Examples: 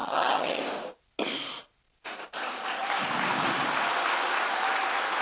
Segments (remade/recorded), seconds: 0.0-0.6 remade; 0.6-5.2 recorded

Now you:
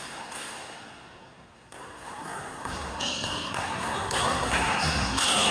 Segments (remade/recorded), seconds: 0.0-5.5 remade

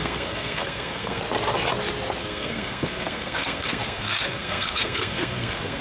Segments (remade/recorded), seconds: 0.0-1.2 remade; 1.2-2.2 recorded; 2.2-5.8 remade

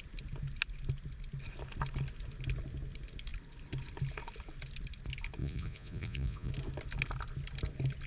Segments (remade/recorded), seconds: 0.0-5.4 recorded; 5.4-6.5 remade; 6.5-8.1 recorded

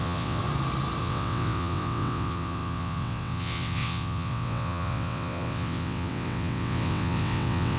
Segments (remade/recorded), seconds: 0.0-0.4 remade; 0.4-1.0 recorded; 1.0-7.8 remade

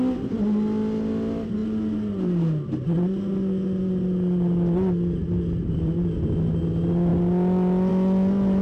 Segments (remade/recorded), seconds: 0.0-8.6 recorded

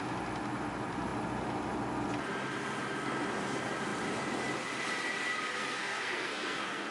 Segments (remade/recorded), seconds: 0.0-5.6 recorded; 5.6-6.9 remade